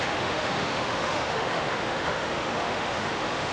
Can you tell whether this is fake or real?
fake